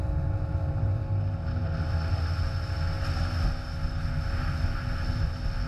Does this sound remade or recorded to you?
recorded